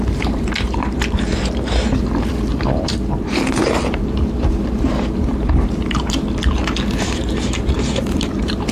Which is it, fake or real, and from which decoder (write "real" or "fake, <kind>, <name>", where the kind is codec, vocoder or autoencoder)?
fake, vocoder, BigVGAN v2